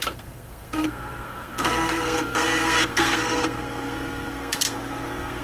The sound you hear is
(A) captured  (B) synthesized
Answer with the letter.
B